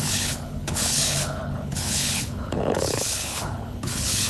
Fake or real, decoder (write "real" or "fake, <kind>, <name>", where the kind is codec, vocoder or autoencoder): fake, codec, HILCodec